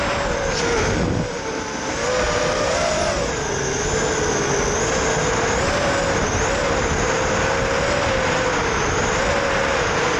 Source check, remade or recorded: recorded